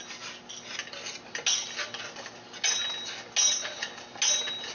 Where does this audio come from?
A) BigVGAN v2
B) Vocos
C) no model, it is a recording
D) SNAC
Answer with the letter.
C